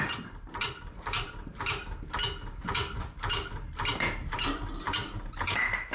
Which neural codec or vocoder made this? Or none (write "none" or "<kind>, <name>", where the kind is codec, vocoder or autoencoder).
none